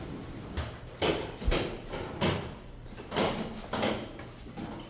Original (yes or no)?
no